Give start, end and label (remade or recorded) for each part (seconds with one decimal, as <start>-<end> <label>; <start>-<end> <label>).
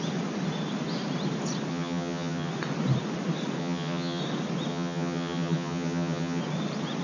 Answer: 0.0-1.7 recorded; 1.7-2.5 remade; 2.5-3.6 recorded; 3.6-4.2 remade; 4.2-4.7 recorded; 4.7-6.4 remade; 6.4-7.0 recorded